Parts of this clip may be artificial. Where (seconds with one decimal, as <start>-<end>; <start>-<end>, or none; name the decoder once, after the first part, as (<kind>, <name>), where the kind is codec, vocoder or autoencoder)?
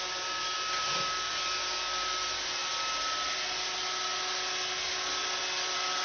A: none